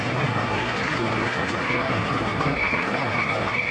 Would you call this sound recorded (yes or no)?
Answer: no